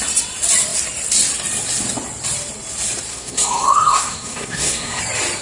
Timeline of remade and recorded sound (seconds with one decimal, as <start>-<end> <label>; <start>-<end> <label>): 0.0-3.1 recorded; 3.1-5.0 remade; 5.0-5.4 recorded

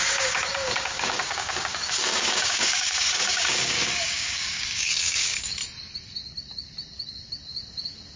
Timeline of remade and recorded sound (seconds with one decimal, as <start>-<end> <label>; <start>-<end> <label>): 0.0-5.6 remade; 5.6-8.2 recorded

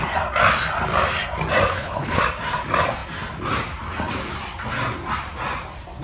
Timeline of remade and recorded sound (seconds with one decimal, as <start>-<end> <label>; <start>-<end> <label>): 0.0-1.7 recorded; 1.7-2.2 remade; 2.2-6.0 recorded

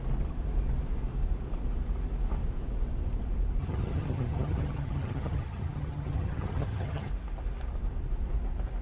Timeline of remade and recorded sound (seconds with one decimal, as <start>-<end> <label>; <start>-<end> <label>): 0.0-3.6 recorded; 3.6-7.1 remade; 7.1-8.8 recorded